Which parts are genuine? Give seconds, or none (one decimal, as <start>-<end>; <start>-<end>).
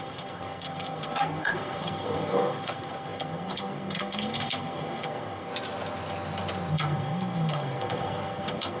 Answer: 5.5-6.7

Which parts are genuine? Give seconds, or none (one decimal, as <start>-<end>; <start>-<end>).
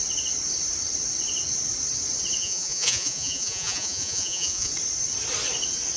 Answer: 0.0-2.4; 4.7-6.0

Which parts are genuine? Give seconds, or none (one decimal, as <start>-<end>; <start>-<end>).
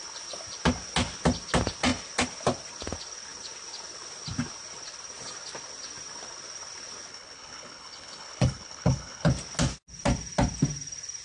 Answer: 0.0-7.1; 9.3-11.2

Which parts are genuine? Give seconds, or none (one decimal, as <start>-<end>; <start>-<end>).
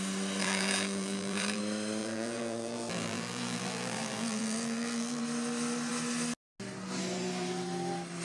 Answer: 0.0-0.4; 1.6-2.0; 5.2-8.2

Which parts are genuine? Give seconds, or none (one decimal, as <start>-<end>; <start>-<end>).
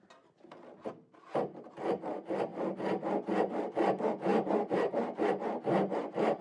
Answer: 0.0-6.4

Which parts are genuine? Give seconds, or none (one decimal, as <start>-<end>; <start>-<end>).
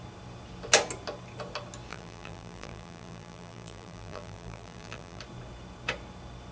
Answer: 0.0-1.9; 5.2-6.5